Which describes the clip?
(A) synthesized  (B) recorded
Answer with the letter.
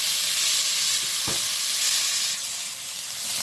B